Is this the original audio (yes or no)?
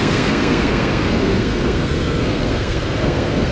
no